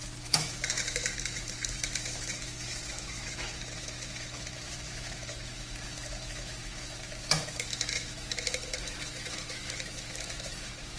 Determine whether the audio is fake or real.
fake